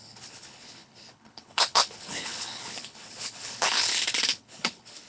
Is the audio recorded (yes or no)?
no